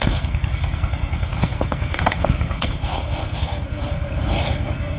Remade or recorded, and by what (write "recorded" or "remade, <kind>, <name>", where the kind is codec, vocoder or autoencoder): remade, codec, SNAC